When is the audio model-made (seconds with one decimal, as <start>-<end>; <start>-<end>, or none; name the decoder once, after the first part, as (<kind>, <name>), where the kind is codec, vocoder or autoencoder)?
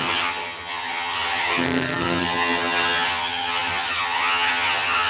0.0-5.1 (vocoder, HiFi-GAN)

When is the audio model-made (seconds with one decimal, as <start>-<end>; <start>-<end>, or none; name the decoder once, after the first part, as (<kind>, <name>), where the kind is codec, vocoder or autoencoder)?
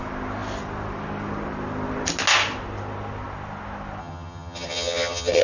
4.0-5.4 (vocoder, HiFi-GAN)